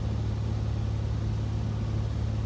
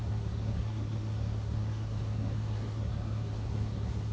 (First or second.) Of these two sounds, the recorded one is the first